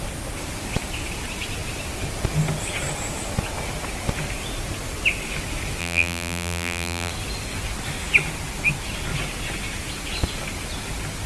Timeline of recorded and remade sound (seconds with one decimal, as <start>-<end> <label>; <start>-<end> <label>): 0.0-5.8 recorded; 5.8-7.1 remade; 7.1-11.3 recorded